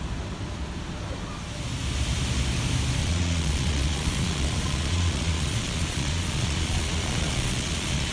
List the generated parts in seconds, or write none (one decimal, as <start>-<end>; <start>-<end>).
3.0-8.1